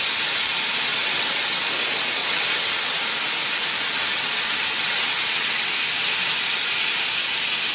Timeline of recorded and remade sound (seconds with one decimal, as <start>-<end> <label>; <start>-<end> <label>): 0.0-0.9 recorded; 0.9-1.7 remade; 1.7-2.2 recorded; 2.2-3.0 remade; 3.0-4.1 recorded; 4.1-5.7 remade; 5.7-7.7 recorded